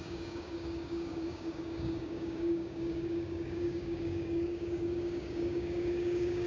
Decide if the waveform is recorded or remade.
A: remade